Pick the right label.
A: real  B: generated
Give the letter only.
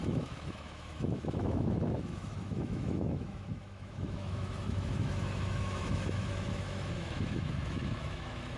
B